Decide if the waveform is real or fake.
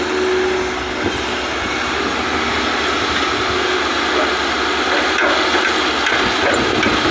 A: real